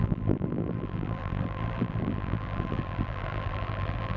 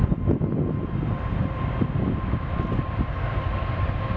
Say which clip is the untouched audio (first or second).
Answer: second